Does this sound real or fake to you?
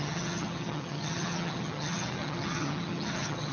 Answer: fake